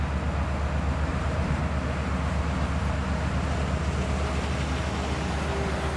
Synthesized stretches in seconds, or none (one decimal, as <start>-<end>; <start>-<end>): 1.1-1.6